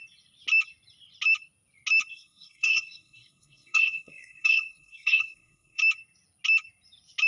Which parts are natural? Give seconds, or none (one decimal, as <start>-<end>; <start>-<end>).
0.0-2.1; 5.8-7.3